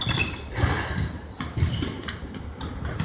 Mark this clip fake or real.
real